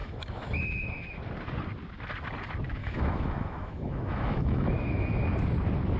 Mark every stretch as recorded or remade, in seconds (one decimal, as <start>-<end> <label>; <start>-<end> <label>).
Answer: 0.0-1.2 remade; 1.2-2.8 recorded; 2.8-5.2 remade; 5.2-6.0 recorded

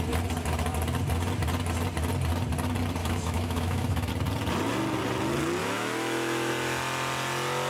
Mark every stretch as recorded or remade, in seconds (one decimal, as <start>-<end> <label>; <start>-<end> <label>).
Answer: 0.0-3.0 recorded; 3.0-4.1 remade; 4.1-5.6 recorded; 5.6-6.5 remade; 6.5-7.7 recorded